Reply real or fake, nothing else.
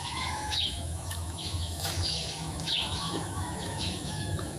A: fake